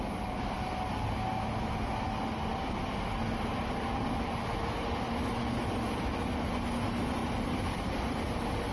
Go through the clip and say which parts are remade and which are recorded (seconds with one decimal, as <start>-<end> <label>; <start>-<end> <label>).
0.0-7.2 recorded; 7.2-8.2 remade; 8.2-8.7 recorded